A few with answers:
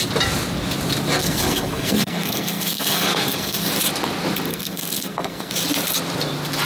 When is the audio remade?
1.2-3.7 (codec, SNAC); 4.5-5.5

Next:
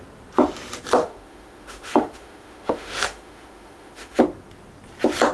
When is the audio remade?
1.0-4.2 (autoencoder, DAC-VAE)

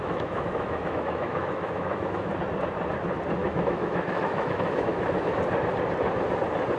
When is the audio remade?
0.0-2.3 (autoencoder, DAC-VAE); 3.4-5.4

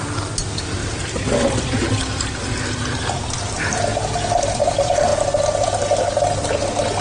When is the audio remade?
0.0-3.9 (vocoder, BigVGAN v2); 4.4-5.1

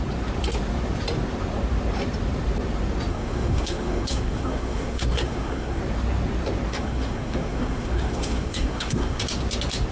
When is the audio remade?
3.1-5.8 (codec, SNAC); 6.7-9.2